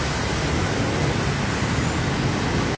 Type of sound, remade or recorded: recorded